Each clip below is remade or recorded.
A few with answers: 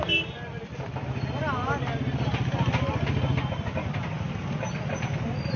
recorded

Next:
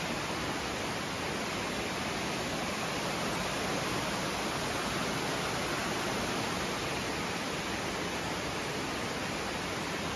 recorded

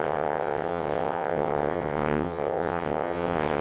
remade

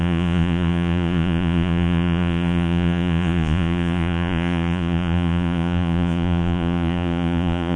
remade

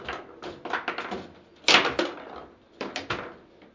recorded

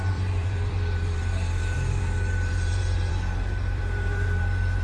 remade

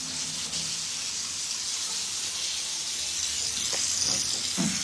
recorded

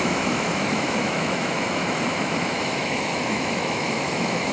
remade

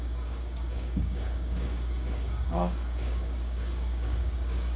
remade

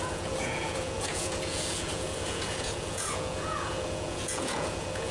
remade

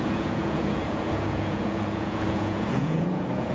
remade